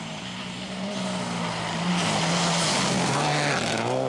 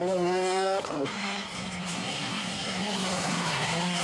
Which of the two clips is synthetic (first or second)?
second